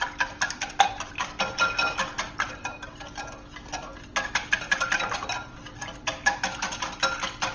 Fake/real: real